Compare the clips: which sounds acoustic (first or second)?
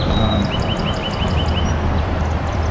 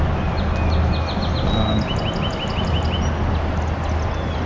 second